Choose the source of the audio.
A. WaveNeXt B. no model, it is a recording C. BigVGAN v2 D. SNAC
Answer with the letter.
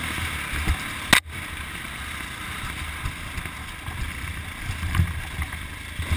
B